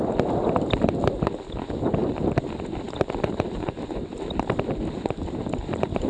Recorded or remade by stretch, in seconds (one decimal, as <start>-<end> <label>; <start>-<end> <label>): 0.0-6.1 recorded